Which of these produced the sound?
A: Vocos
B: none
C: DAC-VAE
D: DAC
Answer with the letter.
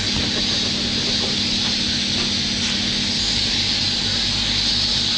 B